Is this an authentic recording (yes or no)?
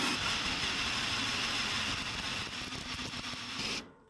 yes